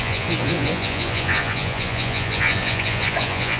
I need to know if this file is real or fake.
fake